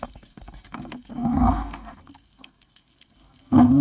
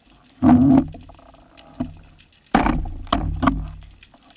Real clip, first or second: second